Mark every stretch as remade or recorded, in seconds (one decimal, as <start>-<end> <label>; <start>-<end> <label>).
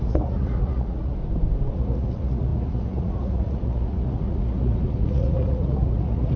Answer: 0.0-1.2 remade; 1.2-1.7 recorded; 1.7-6.4 remade